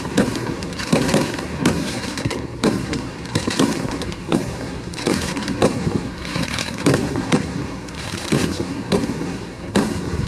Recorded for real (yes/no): no